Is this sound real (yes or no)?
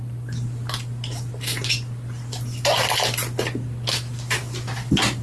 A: yes